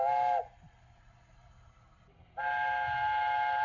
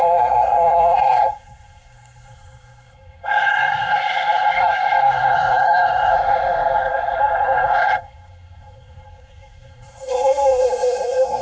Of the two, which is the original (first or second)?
first